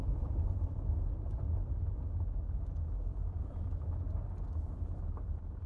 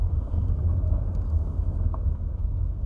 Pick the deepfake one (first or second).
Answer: second